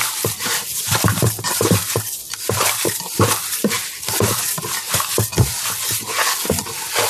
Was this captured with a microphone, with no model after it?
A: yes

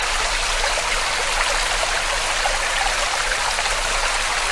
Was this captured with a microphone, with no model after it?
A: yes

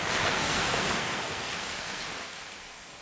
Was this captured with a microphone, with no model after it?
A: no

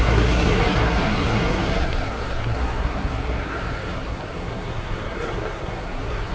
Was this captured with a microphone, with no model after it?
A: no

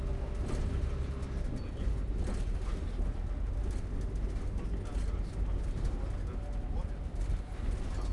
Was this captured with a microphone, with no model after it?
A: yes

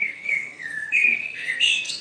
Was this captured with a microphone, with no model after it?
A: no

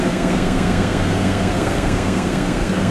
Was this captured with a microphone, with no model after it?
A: no